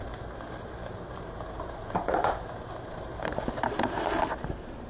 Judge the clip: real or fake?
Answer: fake